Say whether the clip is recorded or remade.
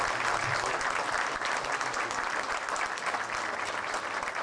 recorded